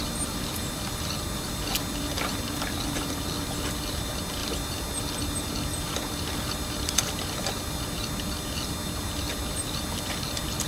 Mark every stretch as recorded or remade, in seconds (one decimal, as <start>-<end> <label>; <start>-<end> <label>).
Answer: 0.0-10.7 recorded

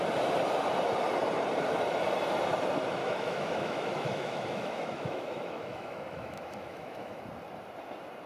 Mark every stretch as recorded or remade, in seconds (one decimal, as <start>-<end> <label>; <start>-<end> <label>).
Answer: 0.0-3.0 recorded; 3.0-7.2 remade; 7.2-8.3 recorded

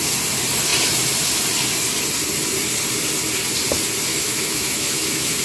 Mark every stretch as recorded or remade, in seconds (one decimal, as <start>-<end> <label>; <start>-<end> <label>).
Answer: 0.0-4.1 recorded; 4.1-5.4 remade

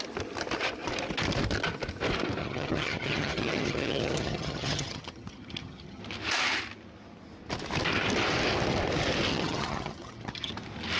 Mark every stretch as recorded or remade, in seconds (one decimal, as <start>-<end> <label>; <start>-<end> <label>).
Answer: 0.0-2.4 recorded; 2.4-6.0 remade; 6.0-9.3 recorded; 9.3-10.5 remade; 10.5-11.0 recorded

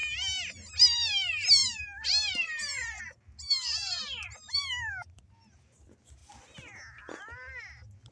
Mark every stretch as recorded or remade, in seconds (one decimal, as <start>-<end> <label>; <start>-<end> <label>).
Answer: 0.0-8.1 recorded

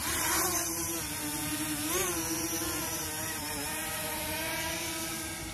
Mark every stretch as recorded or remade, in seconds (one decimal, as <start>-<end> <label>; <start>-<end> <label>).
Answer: 0.0-5.5 recorded

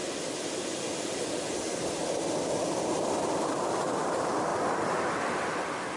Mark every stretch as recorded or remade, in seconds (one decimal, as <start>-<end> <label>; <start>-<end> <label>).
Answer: 0.0-0.6 recorded; 0.6-2.0 remade; 2.0-3.0 recorded; 3.0-4.5 remade; 4.5-5.2 recorded; 5.2-6.0 remade